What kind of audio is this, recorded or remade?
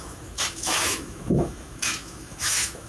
remade